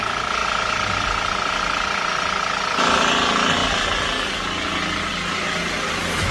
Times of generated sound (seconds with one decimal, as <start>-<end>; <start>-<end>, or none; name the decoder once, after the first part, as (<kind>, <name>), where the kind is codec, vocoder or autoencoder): none